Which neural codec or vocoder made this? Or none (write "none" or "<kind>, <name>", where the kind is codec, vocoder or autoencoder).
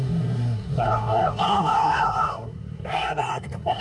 codec, SNAC